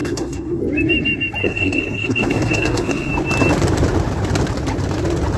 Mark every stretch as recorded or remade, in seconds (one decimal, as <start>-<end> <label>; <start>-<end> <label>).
0.0-0.6 remade; 0.6-1.4 recorded; 1.4-3.1 remade; 3.1-5.4 recorded